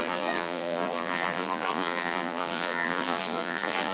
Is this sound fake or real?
fake